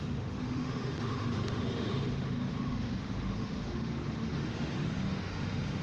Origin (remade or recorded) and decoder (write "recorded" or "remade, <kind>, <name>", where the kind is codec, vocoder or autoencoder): remade, autoencoder, DAC-VAE